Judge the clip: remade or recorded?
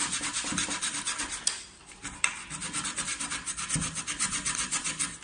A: remade